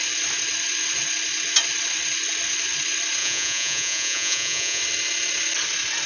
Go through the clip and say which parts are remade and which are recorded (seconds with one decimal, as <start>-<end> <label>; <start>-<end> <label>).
0.0-3.2 recorded; 3.2-4.8 remade; 4.8-6.1 recorded

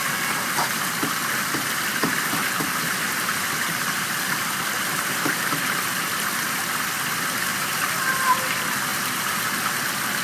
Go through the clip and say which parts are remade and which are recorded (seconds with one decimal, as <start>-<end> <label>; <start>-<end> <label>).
0.0-7.5 recorded; 7.5-8.1 remade; 8.1-10.2 recorded

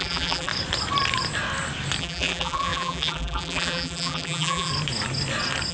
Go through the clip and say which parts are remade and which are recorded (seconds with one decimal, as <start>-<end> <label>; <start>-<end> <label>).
0.0-0.5 remade; 0.5-2.0 recorded; 2.0-4.7 remade; 4.7-5.7 recorded

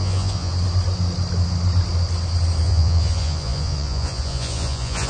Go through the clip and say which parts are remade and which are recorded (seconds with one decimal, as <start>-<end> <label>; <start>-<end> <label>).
0.0-0.5 remade; 0.5-2.6 recorded; 2.6-5.1 remade

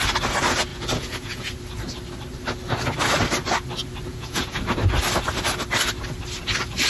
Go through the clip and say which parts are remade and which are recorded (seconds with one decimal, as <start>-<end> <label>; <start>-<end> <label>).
0.0-0.7 recorded; 0.7-1.5 remade; 1.5-4.1 recorded; 4.1-4.6 remade; 4.6-6.9 recorded

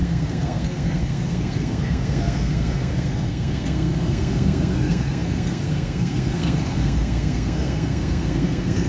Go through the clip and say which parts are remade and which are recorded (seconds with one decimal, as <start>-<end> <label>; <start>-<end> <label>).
0.0-8.9 remade

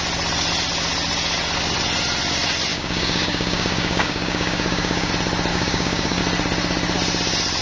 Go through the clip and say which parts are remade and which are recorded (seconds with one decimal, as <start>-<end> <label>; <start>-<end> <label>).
0.0-2.7 recorded; 2.7-5.1 remade; 5.1-5.5 recorded; 5.5-6.2 remade; 6.2-7.6 recorded